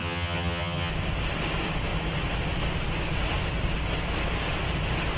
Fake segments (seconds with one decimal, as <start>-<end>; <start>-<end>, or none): 0.0-0.9